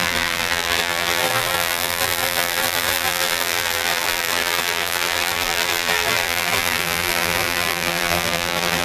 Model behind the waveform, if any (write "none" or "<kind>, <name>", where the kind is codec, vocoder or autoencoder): vocoder, BigVGAN v2